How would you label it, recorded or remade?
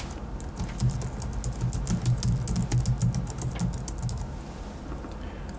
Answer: recorded